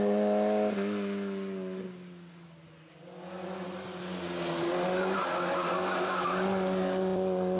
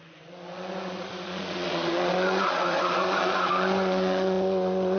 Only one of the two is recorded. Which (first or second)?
first